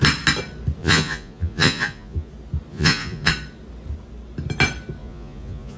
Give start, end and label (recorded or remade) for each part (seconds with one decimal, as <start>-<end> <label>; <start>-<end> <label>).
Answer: 0.0-0.8 recorded; 0.8-2.3 remade; 2.3-2.7 recorded; 2.7-3.3 remade; 3.3-5.0 recorded; 5.0-5.8 remade